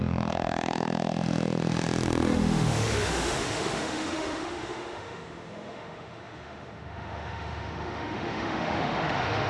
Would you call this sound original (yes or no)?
no